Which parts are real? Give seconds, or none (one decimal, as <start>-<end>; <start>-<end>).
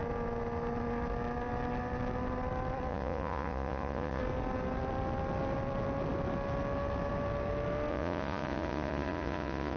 0.0-2.9; 4.2-7.9